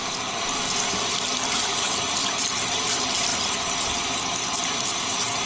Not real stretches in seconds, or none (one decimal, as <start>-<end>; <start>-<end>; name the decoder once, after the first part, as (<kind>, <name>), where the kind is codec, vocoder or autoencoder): none

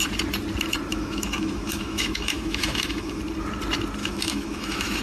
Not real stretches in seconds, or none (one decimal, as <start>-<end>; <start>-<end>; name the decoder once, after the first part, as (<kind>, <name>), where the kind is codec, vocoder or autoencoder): 0.9-3.2 (autoencoder, DAC-VAE); 4.0-5.0

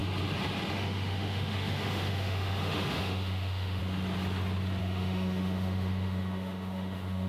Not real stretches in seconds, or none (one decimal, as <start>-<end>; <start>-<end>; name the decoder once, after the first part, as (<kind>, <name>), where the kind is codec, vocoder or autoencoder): 0.7-3.8 (autoencoder, DAC-VAE); 4.8-7.3

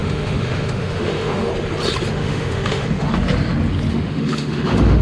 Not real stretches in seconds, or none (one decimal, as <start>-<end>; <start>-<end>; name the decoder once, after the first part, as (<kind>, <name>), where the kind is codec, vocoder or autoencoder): 0.0-1.5 (autoencoder, DAC-VAE); 2.1-3.1; 3.9-5.0

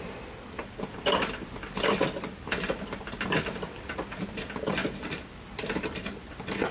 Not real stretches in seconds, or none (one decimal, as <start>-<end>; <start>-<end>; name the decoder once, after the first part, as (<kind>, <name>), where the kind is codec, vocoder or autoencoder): none

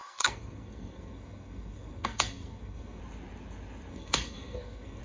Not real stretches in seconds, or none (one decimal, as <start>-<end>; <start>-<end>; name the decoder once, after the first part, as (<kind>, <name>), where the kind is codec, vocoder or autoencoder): 0.0-3.0 (codec, SNAC); 3.9-5.0

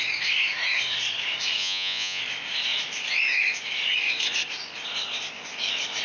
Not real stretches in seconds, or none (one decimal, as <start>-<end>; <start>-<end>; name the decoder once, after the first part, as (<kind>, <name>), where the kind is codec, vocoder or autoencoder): 1.6-2.2 (vocoder, Vocos)